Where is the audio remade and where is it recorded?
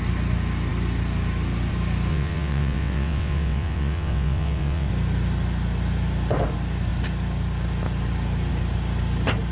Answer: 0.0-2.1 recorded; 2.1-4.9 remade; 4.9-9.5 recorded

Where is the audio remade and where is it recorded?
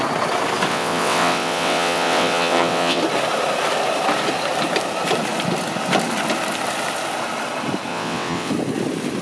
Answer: 0.0-0.7 recorded; 0.7-3.0 remade; 3.0-7.9 recorded; 7.9-8.5 remade; 8.5-9.2 recorded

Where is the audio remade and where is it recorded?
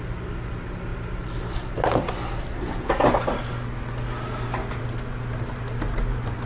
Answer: 0.0-6.5 recorded